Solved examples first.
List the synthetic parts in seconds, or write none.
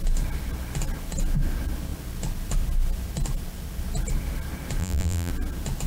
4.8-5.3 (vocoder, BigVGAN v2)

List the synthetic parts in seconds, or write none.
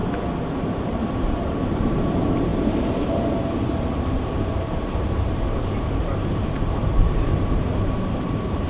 0.6-7.7 (vocoder, BigVGAN v2); 8.2-8.7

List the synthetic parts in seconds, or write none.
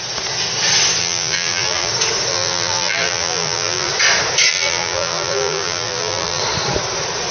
1.0-1.9 (vocoder, BigVGAN v2); 2.3-3.9; 4.5-6.4